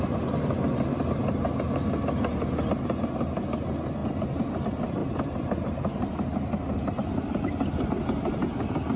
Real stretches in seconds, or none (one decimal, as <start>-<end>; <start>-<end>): 0.0-5.0; 7.4-9.0